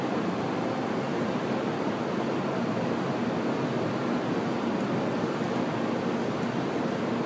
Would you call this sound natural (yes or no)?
yes